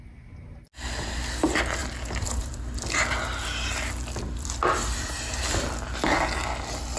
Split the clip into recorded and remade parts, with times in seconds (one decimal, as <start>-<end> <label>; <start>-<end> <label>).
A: 0.0-1.8 recorded; 1.8-2.5 remade; 2.5-7.0 recorded

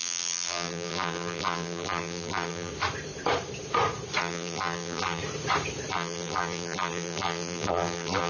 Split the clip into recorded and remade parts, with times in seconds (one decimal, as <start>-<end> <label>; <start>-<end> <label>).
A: 0.0-2.7 remade; 2.7-4.2 recorded; 4.2-5.2 remade; 5.2-5.9 recorded; 5.9-8.3 remade

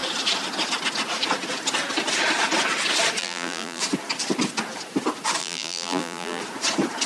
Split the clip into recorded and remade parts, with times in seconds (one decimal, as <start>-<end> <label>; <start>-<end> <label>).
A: 0.0-3.2 recorded; 3.2-3.8 remade; 3.8-5.4 recorded; 5.4-6.4 remade; 6.4-7.1 recorded

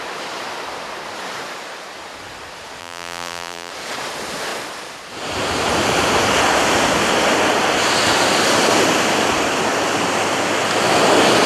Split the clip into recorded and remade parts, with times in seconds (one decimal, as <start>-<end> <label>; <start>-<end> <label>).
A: 0.0-2.8 recorded; 2.8-3.7 remade; 3.7-11.5 recorded

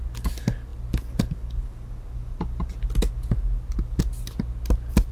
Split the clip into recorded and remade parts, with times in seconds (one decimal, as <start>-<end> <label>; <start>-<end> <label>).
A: 0.0-5.1 recorded

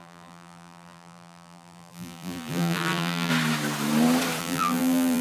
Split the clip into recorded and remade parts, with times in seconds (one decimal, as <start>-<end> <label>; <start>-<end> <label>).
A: 0.0-3.3 remade; 3.3-4.4 recorded; 4.4-5.2 remade

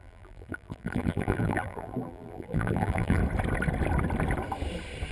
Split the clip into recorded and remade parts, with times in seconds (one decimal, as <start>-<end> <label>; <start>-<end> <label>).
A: 0.0-3.2 remade; 3.2-5.1 recorded